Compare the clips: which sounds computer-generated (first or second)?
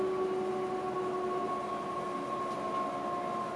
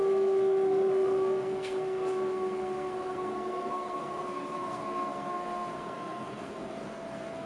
second